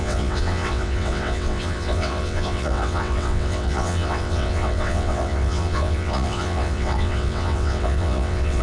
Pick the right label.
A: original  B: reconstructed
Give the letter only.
B